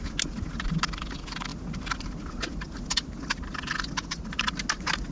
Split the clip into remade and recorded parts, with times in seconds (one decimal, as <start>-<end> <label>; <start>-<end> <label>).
0.0-5.1 recorded

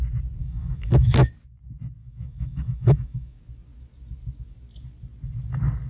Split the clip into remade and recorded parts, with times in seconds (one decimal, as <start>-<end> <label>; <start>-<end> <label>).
0.0-0.4 recorded; 0.4-1.3 remade; 1.3-2.0 recorded; 2.0-3.4 remade; 3.4-5.9 recorded